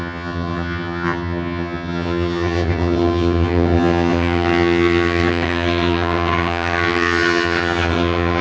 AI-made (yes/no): yes